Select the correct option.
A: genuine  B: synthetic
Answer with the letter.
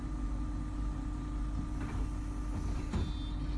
A